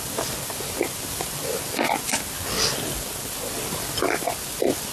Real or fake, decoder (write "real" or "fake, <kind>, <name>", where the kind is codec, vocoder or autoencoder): real